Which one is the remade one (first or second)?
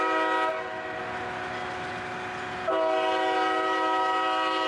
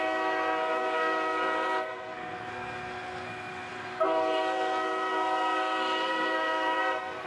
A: second